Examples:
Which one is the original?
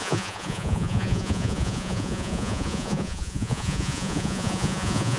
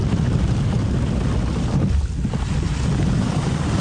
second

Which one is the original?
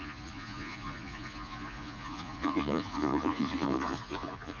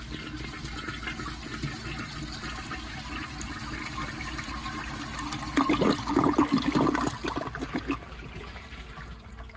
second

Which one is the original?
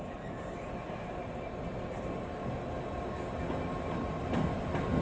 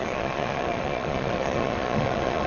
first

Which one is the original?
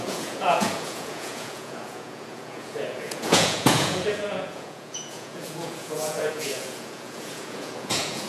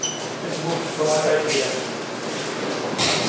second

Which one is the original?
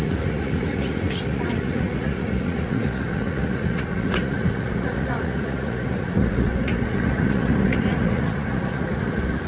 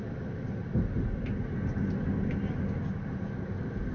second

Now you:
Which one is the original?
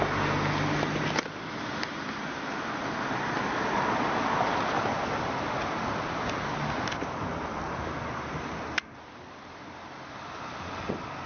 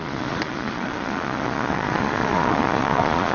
first